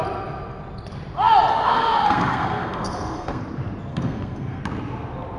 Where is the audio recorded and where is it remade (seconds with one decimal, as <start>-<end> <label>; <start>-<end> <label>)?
0.0-1.5 recorded; 1.5-3.4 remade; 3.4-3.9 recorded; 3.9-4.6 remade; 4.6-5.4 recorded